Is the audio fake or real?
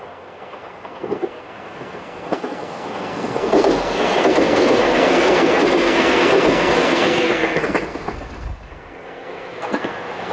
fake